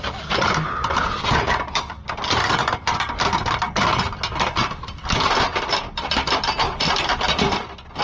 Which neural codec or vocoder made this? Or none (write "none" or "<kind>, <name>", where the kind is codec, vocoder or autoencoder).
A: none